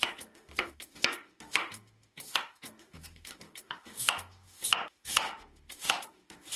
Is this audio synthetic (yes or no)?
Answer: yes